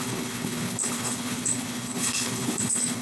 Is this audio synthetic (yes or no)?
yes